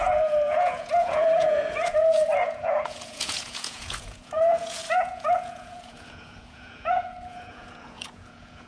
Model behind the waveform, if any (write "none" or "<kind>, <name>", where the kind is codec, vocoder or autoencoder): vocoder, Vocos